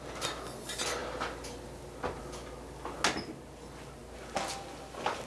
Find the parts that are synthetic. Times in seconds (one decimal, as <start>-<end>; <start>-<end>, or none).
none